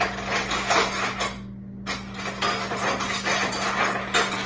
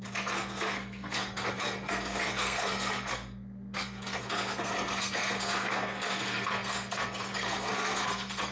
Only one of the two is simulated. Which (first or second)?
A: second